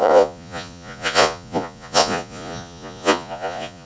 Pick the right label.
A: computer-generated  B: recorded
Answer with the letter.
A